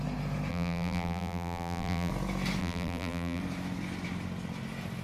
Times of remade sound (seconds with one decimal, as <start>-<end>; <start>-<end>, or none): 0.5-2.1; 2.6-3.4